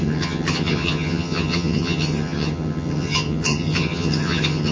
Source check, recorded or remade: remade